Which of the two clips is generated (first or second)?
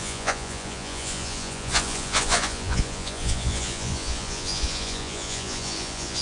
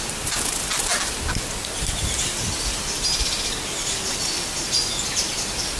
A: first